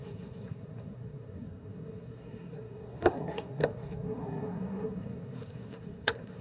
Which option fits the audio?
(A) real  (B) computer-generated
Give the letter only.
B